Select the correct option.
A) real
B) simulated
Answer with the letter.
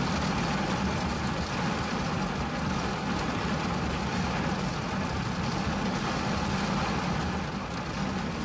A